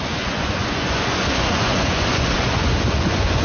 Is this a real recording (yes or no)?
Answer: no